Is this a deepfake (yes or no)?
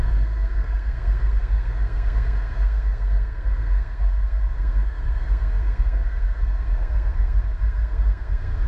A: yes